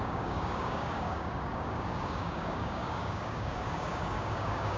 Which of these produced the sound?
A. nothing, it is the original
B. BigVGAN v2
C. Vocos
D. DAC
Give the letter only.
D